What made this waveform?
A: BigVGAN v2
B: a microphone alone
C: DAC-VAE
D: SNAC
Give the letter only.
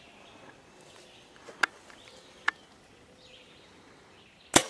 B